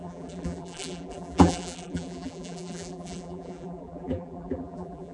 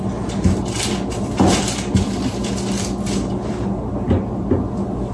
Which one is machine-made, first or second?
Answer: first